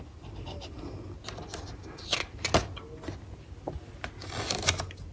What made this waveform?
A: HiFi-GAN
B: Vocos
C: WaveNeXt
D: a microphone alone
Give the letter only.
D